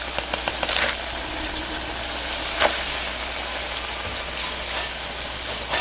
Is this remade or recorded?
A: recorded